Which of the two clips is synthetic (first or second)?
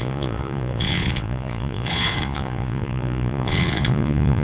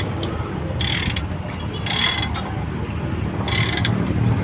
first